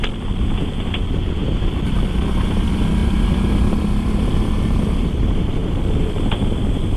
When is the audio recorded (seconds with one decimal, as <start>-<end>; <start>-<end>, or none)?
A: 0.0-3.0; 3.6-7.0